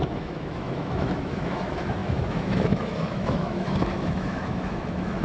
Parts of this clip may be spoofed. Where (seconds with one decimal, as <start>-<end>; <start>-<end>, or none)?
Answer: 0.0-5.2